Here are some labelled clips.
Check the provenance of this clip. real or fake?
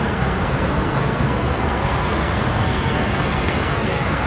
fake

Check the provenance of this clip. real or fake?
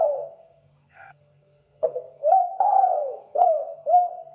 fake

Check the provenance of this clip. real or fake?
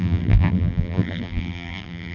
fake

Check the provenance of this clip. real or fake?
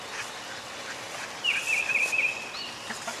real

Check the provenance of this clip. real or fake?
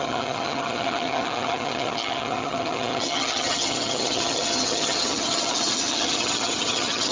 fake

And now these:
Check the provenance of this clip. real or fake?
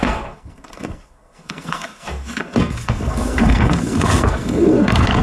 fake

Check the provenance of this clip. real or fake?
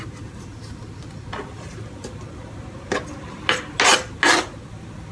real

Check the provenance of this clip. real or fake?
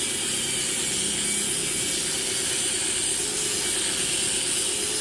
real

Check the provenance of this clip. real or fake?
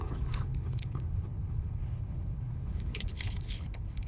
fake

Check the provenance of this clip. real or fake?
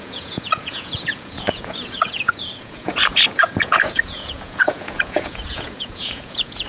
fake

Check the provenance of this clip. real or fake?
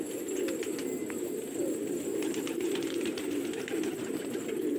real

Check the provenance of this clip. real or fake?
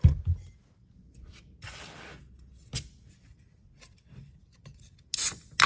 real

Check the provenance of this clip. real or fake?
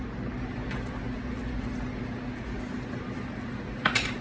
real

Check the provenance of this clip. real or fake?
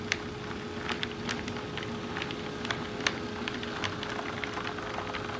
real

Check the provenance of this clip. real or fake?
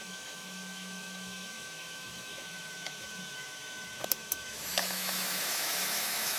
fake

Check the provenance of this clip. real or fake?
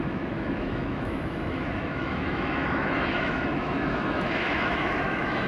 fake